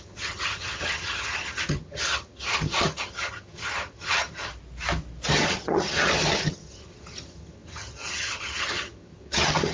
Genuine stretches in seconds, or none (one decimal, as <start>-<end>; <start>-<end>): 4.5-5.3